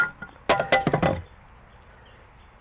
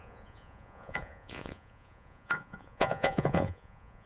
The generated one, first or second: second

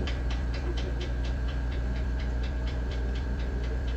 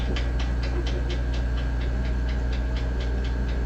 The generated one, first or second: first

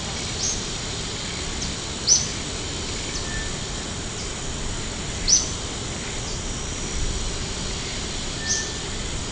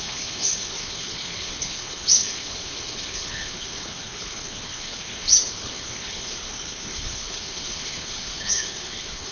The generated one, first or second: second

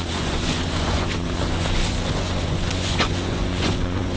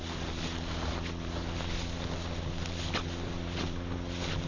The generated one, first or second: first